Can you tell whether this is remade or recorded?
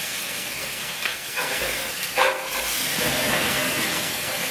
remade